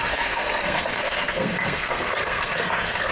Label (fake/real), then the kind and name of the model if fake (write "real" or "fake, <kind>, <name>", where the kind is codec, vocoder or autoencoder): fake, codec, SNAC